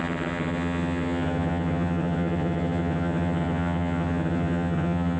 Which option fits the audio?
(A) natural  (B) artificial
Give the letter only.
B